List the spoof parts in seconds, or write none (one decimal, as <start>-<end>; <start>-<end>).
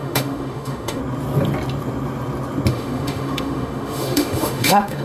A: 0.0-1.0; 2.7-5.0